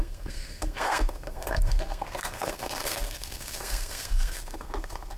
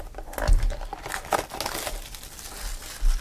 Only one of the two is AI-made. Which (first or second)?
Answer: first